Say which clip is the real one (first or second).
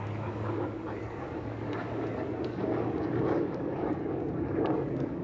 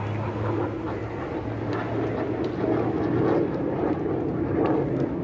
second